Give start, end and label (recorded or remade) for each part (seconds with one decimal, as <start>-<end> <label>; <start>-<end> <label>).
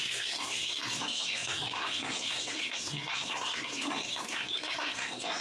0.0-5.4 remade